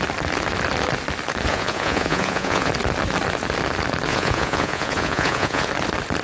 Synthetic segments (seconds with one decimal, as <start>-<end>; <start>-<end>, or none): 1.5-2.7; 4.1-5.7